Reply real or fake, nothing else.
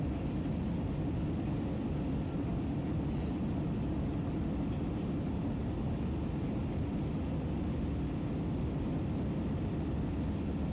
real